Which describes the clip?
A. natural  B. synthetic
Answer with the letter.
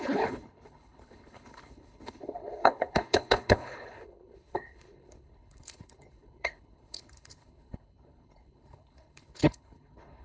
B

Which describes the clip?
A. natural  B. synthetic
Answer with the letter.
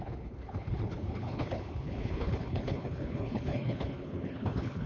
B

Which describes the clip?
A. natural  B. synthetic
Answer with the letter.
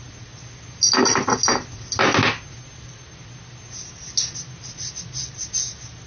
A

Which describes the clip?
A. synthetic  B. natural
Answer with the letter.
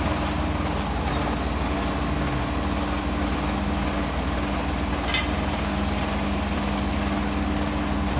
B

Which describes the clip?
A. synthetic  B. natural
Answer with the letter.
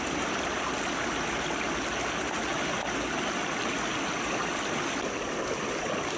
B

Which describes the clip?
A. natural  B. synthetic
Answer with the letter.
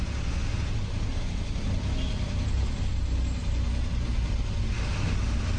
A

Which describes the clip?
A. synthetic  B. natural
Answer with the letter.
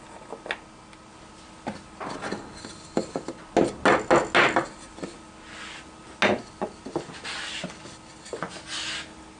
B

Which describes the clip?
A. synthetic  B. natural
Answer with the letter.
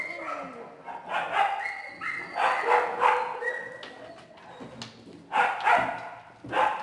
B